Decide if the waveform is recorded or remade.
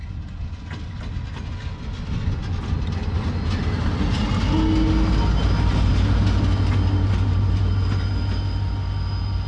recorded